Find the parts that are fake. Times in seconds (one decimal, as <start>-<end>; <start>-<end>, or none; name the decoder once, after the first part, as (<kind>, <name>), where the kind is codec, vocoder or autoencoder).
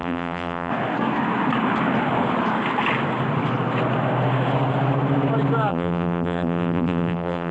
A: 0.0-0.7 (vocoder, BigVGAN v2); 5.7-7.5